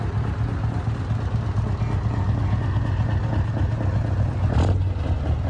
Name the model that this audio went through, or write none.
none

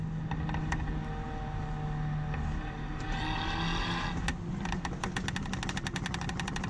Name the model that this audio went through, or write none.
none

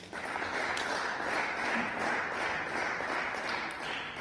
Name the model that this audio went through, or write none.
none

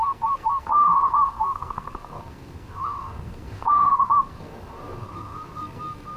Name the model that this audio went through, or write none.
codec, SNAC